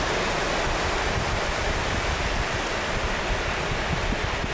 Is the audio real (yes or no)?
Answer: yes